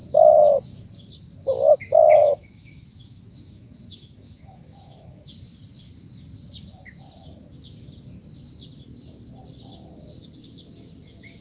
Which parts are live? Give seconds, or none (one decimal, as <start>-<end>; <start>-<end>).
0.9-2.2; 5.4-11.4